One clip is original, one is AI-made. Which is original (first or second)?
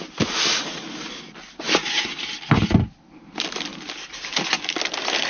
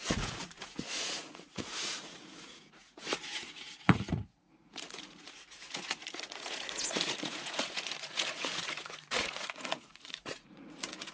first